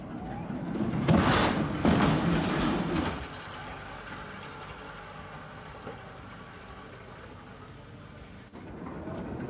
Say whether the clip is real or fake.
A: real